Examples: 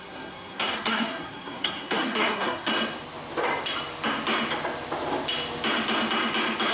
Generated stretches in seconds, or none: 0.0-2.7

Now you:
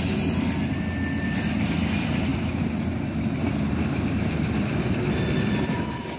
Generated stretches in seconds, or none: 2.3-5.1

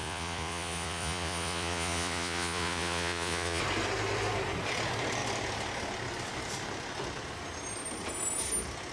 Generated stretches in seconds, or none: 0.0-3.6

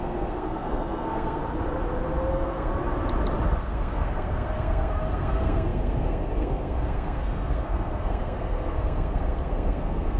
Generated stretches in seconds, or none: 0.0-1.4; 2.3-2.7; 3.6-10.2

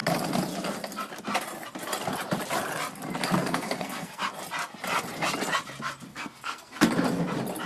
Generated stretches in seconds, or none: 3.4-4.2; 6.1-6.9

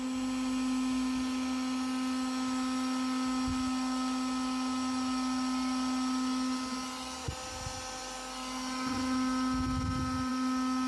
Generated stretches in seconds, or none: none